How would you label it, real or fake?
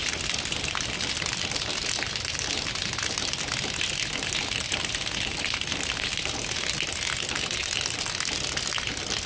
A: real